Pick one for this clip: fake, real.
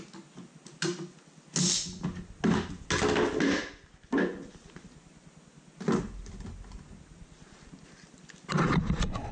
real